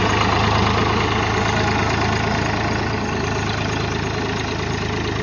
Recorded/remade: recorded